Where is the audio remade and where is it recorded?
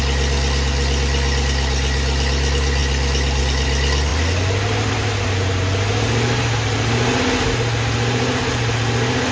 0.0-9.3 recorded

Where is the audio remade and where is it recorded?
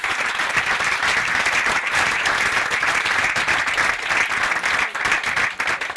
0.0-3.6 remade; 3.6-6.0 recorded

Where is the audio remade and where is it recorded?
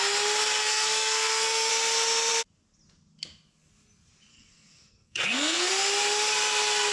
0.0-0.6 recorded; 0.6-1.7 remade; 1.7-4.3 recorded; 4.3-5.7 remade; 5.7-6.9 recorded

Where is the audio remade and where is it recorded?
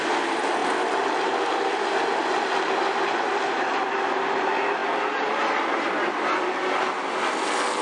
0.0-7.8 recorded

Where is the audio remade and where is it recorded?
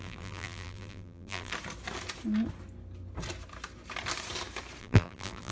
0.0-1.5 remade; 1.5-4.8 recorded; 4.8-5.5 remade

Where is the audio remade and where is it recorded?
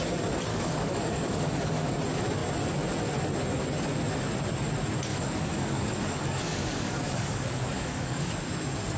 0.0-0.5 recorded; 0.5-1.9 remade; 1.9-5.1 recorded; 5.1-8.3 remade; 8.3-9.0 recorded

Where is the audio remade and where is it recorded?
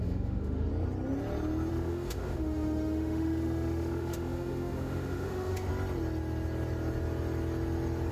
0.0-0.7 remade; 0.7-1.7 recorded; 1.7-5.7 remade; 5.7-8.1 recorded